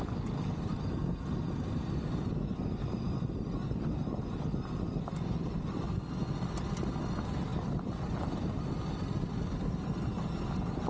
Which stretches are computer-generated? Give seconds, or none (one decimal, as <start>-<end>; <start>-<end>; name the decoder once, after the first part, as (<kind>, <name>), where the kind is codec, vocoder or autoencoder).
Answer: none